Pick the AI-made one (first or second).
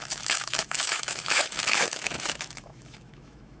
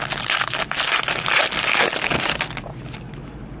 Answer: first